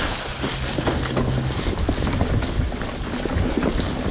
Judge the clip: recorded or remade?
recorded